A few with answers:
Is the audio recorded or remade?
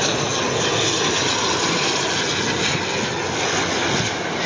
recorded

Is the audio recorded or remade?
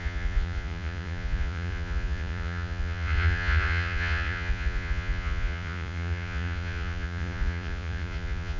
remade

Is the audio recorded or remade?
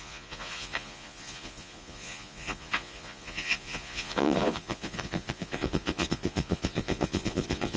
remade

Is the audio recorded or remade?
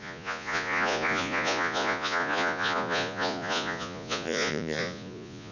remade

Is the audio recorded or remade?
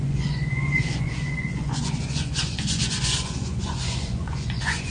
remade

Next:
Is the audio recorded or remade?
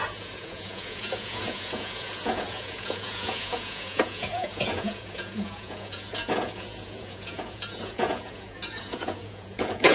remade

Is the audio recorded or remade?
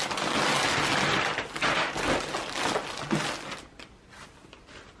recorded